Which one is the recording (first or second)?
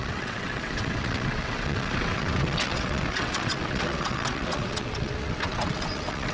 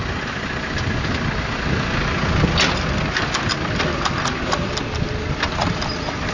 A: second